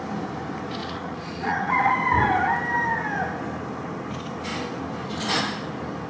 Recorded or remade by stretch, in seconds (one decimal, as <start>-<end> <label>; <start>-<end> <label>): 0.0-0.8 recorded; 0.8-1.9 remade; 1.9-6.1 recorded

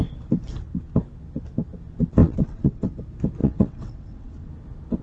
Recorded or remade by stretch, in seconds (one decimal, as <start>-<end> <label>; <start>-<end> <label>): 0.0-2.2 recorded; 2.2-2.9 remade; 2.9-3.4 recorded; 3.4-4.5 remade; 4.5-5.0 recorded

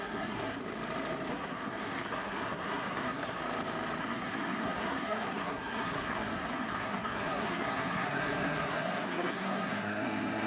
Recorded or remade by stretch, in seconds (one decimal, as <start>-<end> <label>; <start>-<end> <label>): 0.0-0.6 remade; 0.6-1.3 recorded; 1.3-3.4 remade; 3.4-4.0 recorded; 4.0-10.5 remade

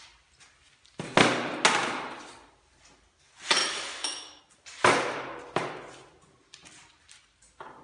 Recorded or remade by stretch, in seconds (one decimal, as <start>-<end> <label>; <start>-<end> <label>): 0.0-3.6 recorded; 3.6-4.4 remade; 4.4-7.8 recorded

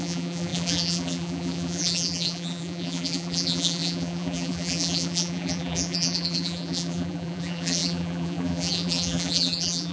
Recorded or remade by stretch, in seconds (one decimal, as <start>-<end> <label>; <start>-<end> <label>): 0.0-9.9 remade

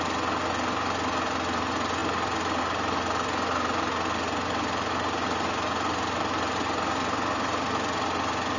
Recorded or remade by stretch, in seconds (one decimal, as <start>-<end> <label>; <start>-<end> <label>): 0.0-8.6 recorded

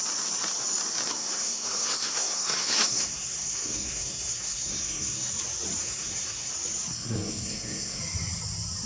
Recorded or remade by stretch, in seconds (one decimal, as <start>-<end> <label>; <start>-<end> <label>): 0.0-1.1 recorded; 1.1-5.3 remade; 5.3-5.8 recorded; 5.8-6.5 remade; 6.5-6.9 recorded; 6.9-8.0 remade; 8.0-8.9 recorded